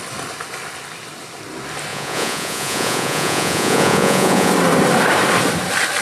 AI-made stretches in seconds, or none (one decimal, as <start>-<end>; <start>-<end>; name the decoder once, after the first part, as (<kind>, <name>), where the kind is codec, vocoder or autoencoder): 1.9-4.5 (vocoder, Vocos)